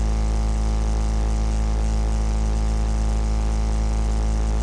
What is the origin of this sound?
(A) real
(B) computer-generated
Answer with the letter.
B